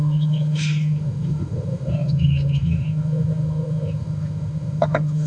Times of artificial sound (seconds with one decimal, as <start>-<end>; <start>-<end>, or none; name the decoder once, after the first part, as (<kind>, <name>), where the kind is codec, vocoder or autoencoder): 0.0-5.3 (autoencoder, DAC-VAE)